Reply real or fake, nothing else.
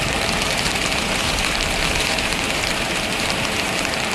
fake